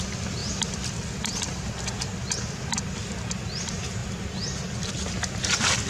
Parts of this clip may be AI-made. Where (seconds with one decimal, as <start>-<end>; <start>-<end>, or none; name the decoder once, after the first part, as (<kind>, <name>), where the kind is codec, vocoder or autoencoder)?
0.4-1.9 (vocoder, BigVGAN v2)